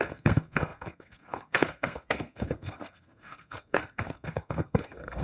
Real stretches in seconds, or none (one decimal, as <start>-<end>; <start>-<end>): none